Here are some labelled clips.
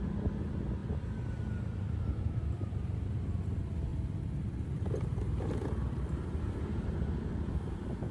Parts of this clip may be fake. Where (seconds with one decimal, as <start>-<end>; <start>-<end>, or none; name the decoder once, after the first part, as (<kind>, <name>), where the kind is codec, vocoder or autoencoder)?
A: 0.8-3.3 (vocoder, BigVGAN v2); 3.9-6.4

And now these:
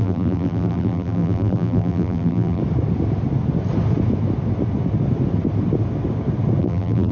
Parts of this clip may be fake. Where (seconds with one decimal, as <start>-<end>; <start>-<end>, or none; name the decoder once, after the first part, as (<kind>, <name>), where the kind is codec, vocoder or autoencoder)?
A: 0.0-2.6 (vocoder, BigVGAN v2); 6.6-7.1

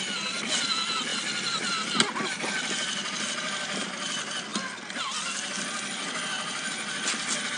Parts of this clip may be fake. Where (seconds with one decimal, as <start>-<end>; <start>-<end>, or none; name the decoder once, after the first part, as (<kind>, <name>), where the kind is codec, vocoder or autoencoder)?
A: none

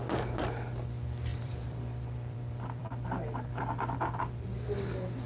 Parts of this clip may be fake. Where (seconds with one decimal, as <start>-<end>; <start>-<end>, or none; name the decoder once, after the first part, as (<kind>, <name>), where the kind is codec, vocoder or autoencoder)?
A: 1.3-4.5 (vocoder, BigVGAN v2)